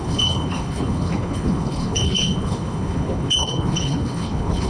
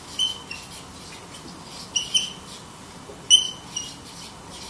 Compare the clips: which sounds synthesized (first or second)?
first